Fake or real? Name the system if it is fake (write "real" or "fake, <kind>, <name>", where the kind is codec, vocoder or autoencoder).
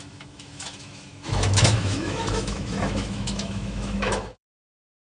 fake, autoencoder, DAC-VAE